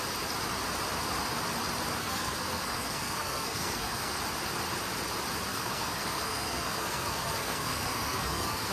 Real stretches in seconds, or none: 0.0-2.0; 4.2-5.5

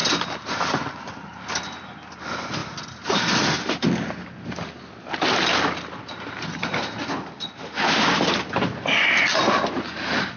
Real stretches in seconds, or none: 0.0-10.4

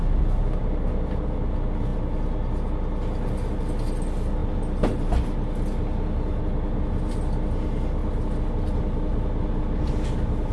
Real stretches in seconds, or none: 0.0-10.5